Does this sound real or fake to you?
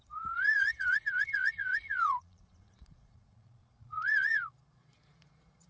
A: fake